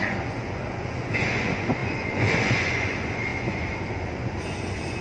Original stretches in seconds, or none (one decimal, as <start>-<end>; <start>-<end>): none